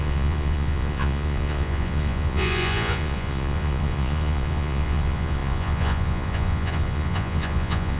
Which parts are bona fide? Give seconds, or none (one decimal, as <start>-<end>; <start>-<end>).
none